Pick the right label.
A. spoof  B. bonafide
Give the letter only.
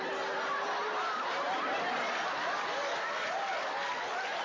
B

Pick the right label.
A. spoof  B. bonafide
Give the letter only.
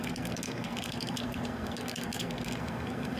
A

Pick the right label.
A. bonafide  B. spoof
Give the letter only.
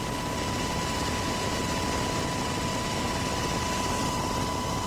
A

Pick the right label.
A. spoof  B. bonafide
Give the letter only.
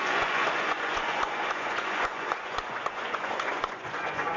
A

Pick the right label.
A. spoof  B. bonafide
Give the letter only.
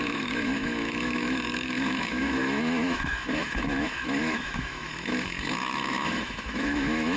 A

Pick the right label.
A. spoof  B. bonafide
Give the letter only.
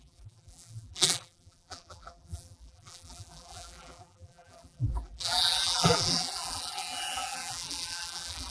A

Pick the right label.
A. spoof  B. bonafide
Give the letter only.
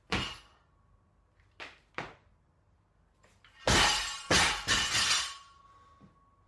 B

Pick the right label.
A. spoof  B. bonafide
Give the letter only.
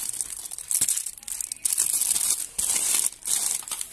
B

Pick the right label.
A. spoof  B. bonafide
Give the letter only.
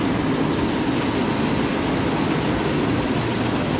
B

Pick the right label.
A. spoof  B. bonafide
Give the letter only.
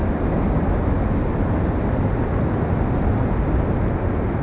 B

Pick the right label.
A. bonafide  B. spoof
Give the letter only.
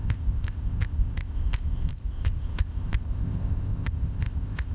B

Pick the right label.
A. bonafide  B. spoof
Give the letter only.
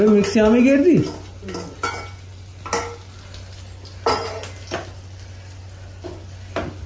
A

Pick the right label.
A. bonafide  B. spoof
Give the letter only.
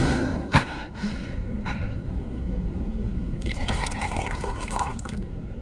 B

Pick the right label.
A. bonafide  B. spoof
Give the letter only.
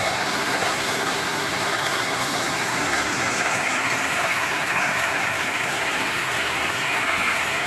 B